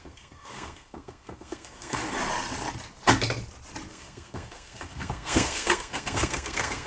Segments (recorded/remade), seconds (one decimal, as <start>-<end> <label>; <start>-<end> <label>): 0.0-2.0 remade; 2.0-3.9 recorded; 3.9-6.9 remade